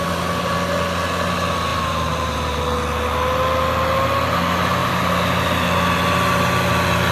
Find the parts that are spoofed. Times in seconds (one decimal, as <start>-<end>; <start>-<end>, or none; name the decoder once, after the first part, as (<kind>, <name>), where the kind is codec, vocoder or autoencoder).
1.7-2.6 (vocoder, BigVGAN v2)